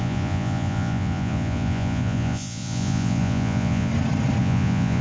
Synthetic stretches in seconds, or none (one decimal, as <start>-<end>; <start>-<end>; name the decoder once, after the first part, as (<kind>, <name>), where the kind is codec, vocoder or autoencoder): 0.0-3.9 (vocoder, Vocos); 4.4-5.0